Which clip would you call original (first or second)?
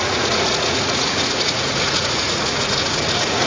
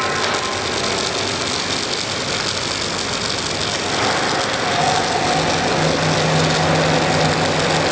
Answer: second